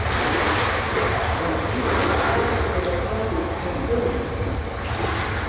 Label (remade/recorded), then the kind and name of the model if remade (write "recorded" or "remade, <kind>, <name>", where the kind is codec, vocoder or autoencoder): recorded